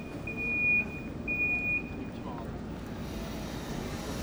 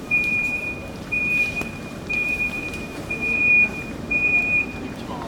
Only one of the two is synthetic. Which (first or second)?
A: second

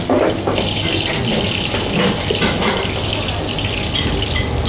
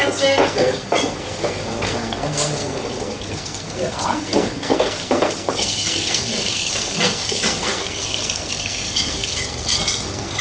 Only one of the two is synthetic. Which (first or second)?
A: second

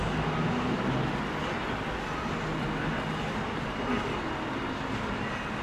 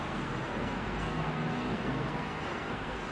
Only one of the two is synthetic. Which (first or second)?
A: second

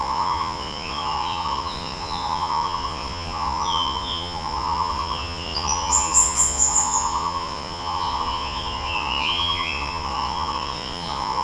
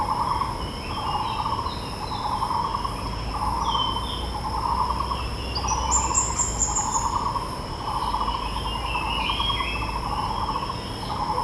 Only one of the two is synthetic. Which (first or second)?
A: first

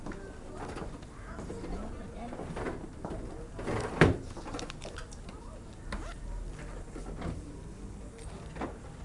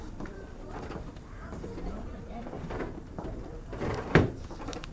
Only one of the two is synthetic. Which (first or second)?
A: second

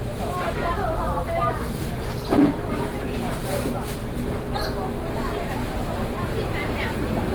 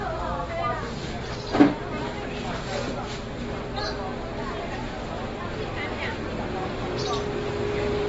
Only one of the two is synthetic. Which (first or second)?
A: first